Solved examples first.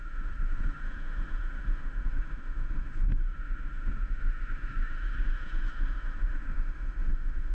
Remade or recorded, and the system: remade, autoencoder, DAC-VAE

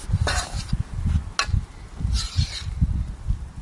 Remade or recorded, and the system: recorded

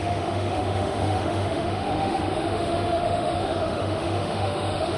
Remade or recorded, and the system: remade, autoencoder, DAC-VAE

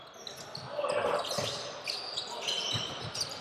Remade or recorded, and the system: recorded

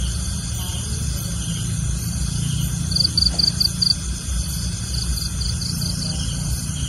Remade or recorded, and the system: recorded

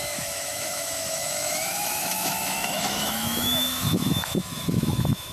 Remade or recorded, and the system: remade, autoencoder, DAC-VAE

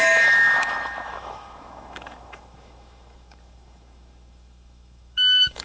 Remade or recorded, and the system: remade, autoencoder, DAC-VAE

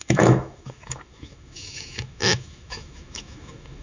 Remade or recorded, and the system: remade, autoencoder, DAC-VAE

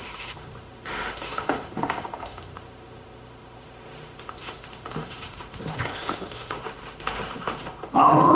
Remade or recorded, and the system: remade, autoencoder, DAC-VAE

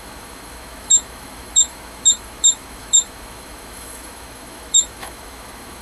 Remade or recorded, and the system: remade, autoencoder, DAC-VAE